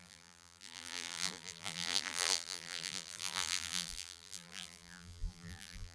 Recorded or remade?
remade